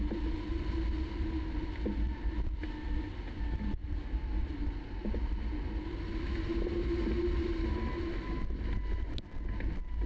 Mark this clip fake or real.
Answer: real